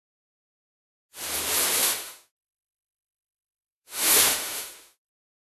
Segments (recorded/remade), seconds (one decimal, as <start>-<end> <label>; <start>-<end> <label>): 0.0-1.8 recorded; 1.8-5.1 remade; 5.1-5.5 recorded